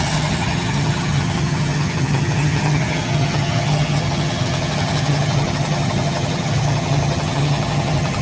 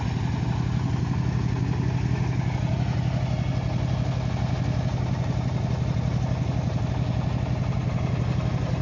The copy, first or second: first